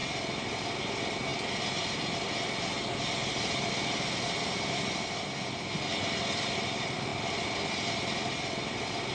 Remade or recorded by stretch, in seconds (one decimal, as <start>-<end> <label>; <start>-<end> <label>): 0.0-9.1 recorded